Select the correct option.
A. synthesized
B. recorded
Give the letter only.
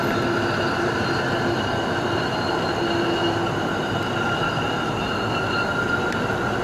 B